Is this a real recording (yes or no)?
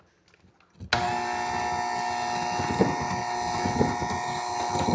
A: yes